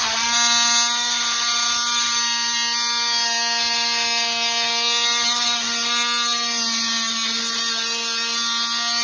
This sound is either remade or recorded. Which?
recorded